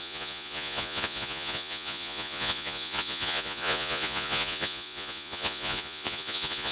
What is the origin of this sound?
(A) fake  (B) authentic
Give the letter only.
A